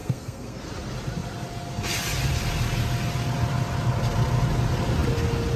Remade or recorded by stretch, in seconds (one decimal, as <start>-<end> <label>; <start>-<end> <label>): 0.0-0.6 remade; 0.6-5.6 recorded